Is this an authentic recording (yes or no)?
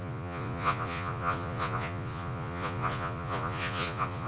no